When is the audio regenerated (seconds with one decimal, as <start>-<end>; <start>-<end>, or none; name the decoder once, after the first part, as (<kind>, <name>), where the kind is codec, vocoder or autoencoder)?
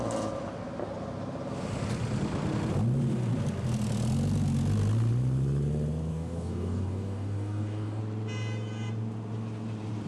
6.1-8.0 (codec, DAC)